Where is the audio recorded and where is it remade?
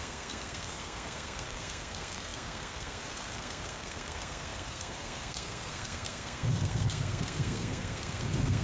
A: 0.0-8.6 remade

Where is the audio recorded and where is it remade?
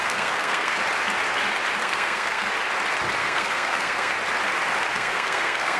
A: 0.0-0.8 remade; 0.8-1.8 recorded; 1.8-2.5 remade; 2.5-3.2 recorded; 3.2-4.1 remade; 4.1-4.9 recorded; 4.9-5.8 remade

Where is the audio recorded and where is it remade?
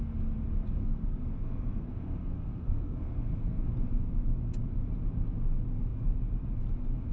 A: 0.0-0.8 recorded; 0.8-3.6 remade; 3.6-7.1 recorded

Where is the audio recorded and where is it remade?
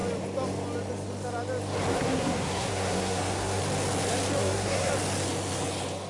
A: 0.0-1.9 recorded; 1.9-3.6 remade; 3.6-4.4 recorded; 4.4-4.9 remade; 4.9-6.1 recorded